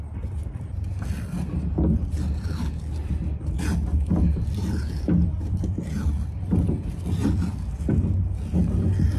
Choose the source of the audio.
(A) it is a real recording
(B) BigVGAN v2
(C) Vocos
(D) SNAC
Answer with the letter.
A